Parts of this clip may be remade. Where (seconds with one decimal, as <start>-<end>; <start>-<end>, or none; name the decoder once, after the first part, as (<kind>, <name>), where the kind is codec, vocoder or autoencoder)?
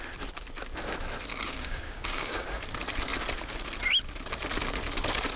1.3-2.6 (codec, DAC)